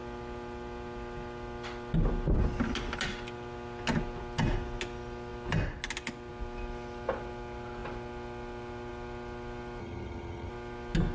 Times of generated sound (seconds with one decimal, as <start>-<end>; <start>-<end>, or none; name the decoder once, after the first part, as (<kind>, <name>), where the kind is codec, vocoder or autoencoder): 9.8-10.5 (vocoder, HiFi-GAN)